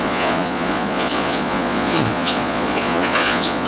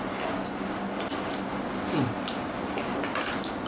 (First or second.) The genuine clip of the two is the second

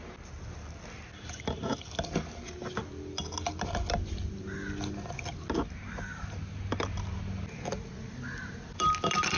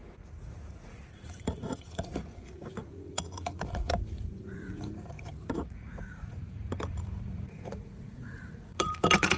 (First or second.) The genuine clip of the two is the first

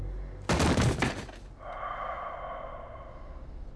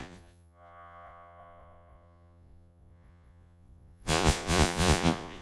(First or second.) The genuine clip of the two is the first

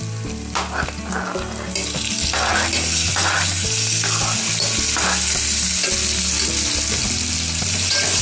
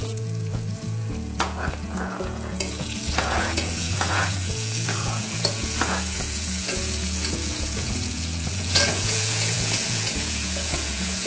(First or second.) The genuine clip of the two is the first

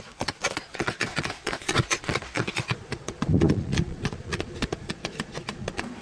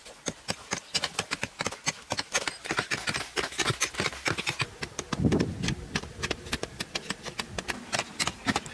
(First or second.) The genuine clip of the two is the second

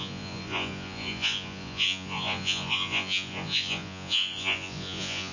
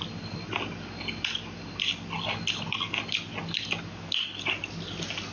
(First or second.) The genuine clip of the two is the second